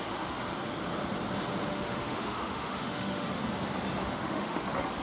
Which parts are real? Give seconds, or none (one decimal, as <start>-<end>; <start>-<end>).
0.0-1.7; 3.4-4.0; 4.6-5.0